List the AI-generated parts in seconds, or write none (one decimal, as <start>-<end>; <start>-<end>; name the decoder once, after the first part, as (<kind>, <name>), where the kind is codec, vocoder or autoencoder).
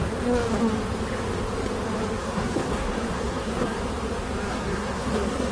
2.2-3.8 (codec, SNAC); 4.5-5.5